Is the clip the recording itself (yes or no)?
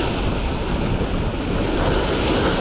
yes